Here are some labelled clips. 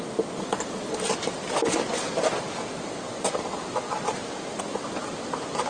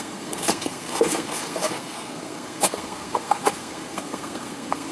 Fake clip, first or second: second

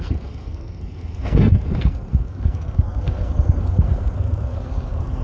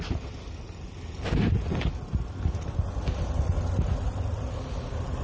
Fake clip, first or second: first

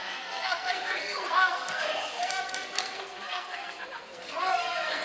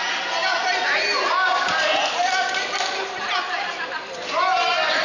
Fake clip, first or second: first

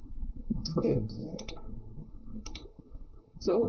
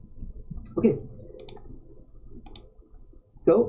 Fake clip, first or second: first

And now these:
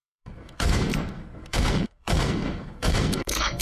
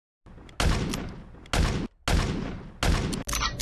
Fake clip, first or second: first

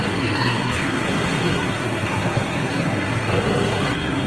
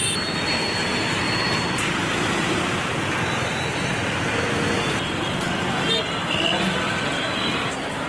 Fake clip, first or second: first